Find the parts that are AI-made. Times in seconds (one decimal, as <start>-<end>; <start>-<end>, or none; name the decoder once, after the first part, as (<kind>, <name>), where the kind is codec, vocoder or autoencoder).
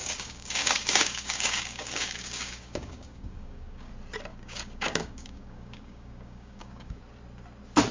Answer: 0.0-3.9 (codec, DAC); 4.3-7.0